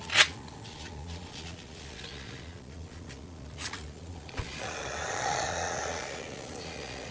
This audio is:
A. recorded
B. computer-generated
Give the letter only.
B